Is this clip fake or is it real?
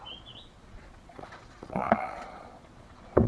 fake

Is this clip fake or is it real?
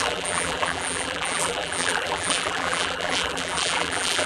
fake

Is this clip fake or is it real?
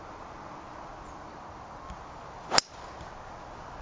real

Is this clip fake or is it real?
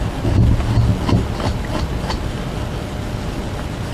real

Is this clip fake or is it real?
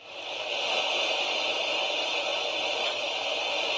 real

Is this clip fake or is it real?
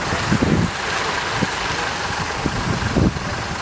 real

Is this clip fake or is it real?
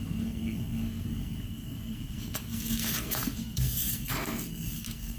fake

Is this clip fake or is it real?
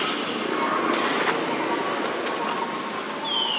real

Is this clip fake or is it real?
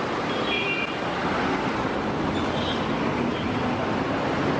real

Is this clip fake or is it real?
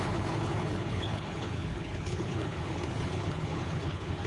fake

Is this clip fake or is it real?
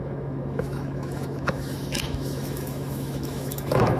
fake